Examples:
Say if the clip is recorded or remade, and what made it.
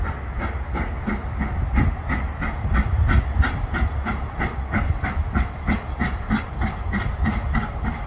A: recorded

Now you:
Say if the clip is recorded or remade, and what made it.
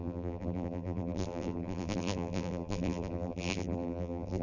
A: remade, vocoder, BigVGAN v2